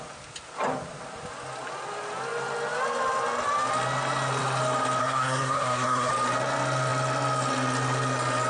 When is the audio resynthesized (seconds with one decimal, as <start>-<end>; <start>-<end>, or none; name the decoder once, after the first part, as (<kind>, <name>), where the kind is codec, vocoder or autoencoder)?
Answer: 5.0-6.1 (codec, SNAC)